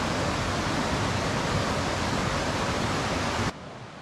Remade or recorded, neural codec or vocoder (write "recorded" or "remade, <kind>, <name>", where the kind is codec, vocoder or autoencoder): recorded